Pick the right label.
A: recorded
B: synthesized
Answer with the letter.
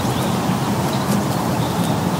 B